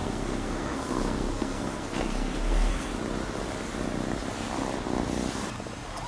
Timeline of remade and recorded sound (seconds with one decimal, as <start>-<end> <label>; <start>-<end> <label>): 0.0-2.9 remade; 2.9-6.1 recorded